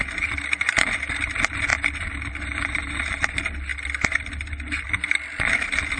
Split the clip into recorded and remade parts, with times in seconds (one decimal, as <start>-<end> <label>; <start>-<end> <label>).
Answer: 0.0-6.0 recorded

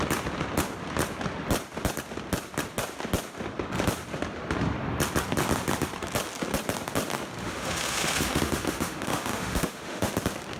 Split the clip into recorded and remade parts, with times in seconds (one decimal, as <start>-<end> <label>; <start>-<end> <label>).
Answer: 0.0-7.4 recorded; 7.4-10.1 remade; 10.1-10.6 recorded